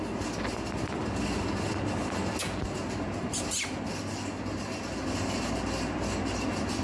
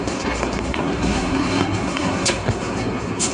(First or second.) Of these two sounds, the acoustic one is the first